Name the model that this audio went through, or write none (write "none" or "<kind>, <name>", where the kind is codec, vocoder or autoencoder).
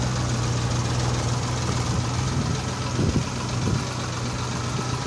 none